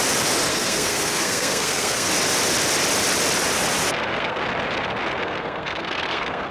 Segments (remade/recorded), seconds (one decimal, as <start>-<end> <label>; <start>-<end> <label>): 0.0-0.5 recorded; 0.5-2.1 remade; 2.1-3.9 recorded; 3.9-4.4 remade; 4.4-5.2 recorded; 5.2-6.5 remade